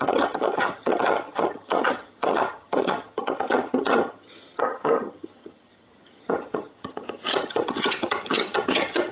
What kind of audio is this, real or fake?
fake